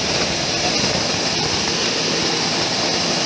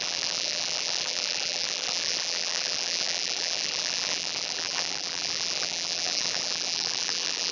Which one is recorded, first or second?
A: first